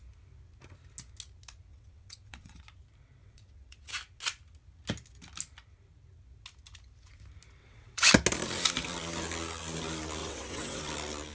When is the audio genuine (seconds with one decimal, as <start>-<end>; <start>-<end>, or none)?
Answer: 0.0-1.7; 2.6-3.2; 3.9-7.6; 8.1-10.2; 10.8-11.3

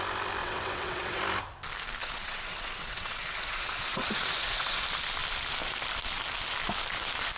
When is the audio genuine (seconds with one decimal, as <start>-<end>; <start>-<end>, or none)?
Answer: 0.0-0.4; 1.2-2.0; 4.8-7.4

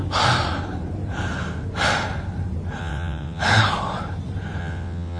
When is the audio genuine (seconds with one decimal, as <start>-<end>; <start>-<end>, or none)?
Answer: 0.0-2.8; 3.4-4.6

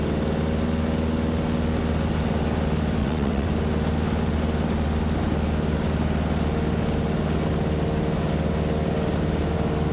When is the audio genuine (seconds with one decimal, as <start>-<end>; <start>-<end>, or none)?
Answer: 0.0-3.0; 3.5-9.9

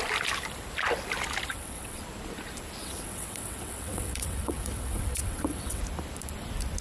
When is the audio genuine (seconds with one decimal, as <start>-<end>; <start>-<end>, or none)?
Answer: 0.0-1.5; 2.0-2.8; 5.8-6.8

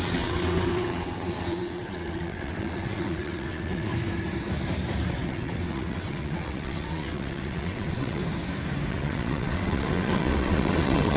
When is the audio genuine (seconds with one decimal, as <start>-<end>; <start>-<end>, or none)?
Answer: 3.9-5.1; 8.2-8.9